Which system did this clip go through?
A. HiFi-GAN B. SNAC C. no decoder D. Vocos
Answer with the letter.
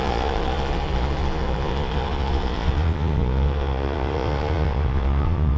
D